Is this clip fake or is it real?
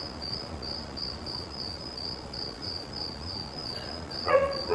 fake